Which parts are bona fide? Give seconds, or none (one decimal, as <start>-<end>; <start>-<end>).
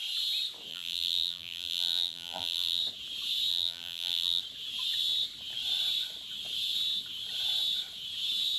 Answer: 0.0-0.7; 2.8-3.5; 4.4-8.6